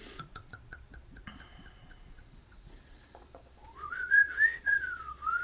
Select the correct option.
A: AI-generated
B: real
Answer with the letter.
A